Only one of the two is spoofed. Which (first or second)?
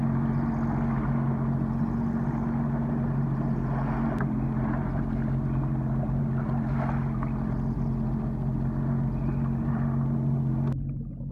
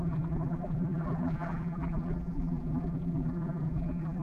second